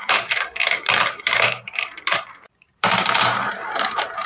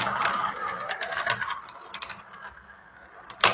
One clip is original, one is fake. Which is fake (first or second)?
first